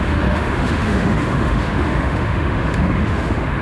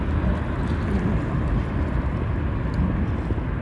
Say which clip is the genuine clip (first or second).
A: second